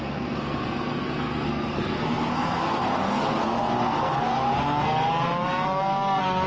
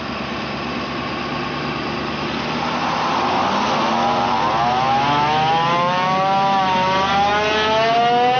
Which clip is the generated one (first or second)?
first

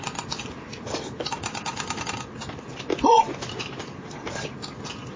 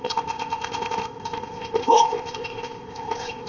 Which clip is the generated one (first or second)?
second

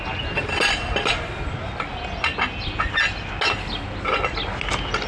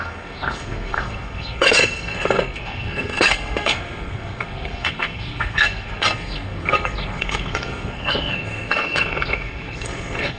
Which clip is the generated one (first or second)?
second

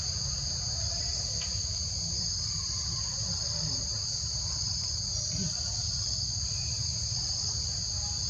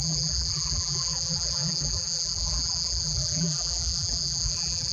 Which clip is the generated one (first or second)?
second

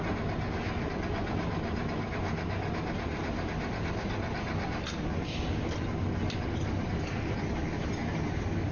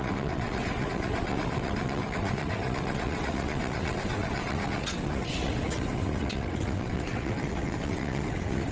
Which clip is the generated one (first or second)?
second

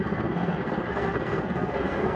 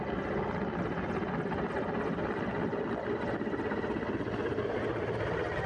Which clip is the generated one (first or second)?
first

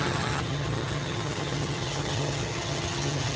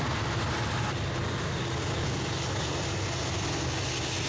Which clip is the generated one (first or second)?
first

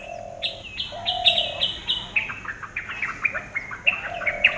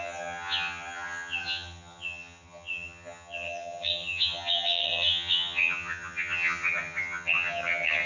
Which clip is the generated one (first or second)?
second